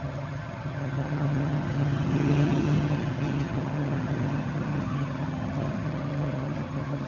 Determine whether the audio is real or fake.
fake